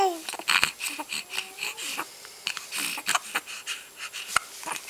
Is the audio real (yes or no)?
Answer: yes